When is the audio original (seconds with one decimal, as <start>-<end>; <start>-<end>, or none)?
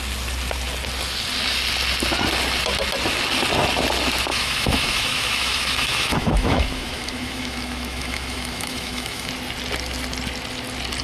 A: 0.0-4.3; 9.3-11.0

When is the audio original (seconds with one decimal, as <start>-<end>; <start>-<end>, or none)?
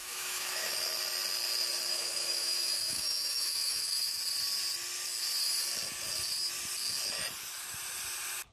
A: 0.7-1.9; 4.2-8.5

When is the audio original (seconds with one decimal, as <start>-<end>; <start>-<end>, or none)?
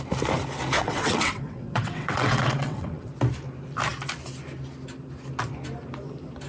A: 0.0-0.8; 3.1-6.5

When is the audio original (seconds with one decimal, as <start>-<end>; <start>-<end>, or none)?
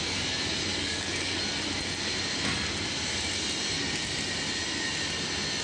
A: 0.0-0.7; 1.4-5.6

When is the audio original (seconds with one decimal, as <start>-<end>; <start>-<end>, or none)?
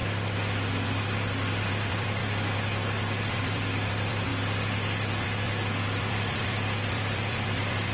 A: 0.0-1.7; 2.2-3.3; 4.3-5.2